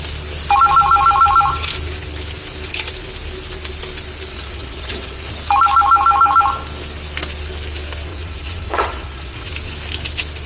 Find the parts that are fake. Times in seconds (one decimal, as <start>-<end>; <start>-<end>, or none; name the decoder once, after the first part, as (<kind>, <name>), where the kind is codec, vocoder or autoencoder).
4.3-5.3 (vocoder, WaveNeXt); 8.1-9.5